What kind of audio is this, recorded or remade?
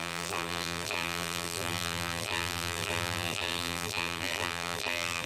remade